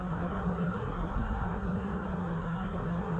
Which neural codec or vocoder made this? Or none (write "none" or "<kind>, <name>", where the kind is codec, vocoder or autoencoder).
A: codec, SNAC